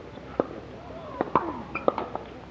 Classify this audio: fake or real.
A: real